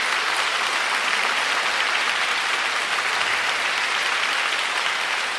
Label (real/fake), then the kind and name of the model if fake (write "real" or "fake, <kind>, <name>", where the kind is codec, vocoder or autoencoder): real